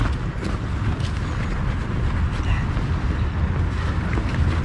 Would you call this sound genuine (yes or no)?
yes